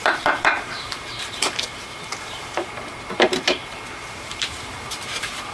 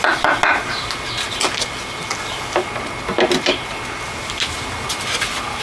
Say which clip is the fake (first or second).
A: first